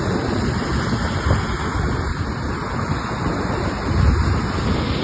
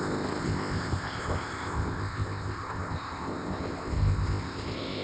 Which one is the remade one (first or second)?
second